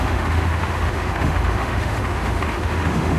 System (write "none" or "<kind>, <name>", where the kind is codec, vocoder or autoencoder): autoencoder, DAC-VAE